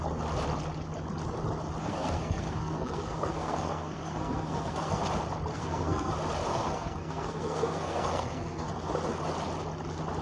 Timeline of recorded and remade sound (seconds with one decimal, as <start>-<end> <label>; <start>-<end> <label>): 0.0-1.8 recorded; 1.8-5.0 remade; 5.0-5.5 recorded; 5.5-6.1 remade; 6.1-6.5 recorded; 6.5-8.7 remade; 8.7-10.2 recorded

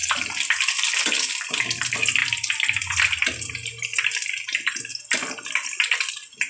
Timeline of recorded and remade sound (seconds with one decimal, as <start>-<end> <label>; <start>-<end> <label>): 0.0-6.5 recorded

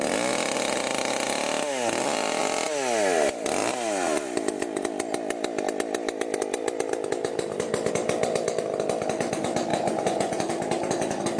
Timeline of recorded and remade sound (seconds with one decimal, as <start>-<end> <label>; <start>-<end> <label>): 0.0-9.7 recorded; 9.7-10.5 remade; 10.5-11.4 recorded

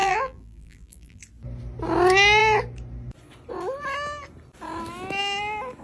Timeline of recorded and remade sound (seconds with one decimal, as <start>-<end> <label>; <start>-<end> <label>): 0.0-1.2 remade; 1.2-5.8 recorded

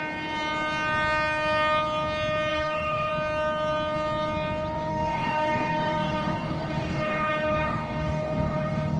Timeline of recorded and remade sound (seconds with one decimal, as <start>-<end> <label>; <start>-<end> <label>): 0.0-2.5 recorded; 2.5-3.1 remade; 3.1-4.9 recorded; 4.9-9.0 remade

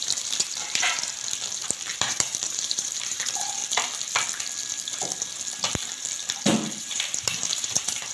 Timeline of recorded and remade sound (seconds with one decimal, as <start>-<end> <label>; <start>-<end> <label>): 0.0-1.1 remade; 1.1-1.9 recorded; 1.9-3.6 remade; 3.6-6.8 recorded; 6.8-8.1 remade

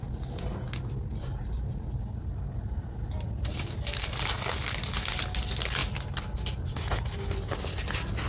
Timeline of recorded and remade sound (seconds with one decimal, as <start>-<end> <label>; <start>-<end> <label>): 0.0-8.3 recorded